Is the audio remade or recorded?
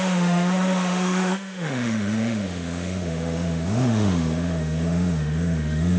remade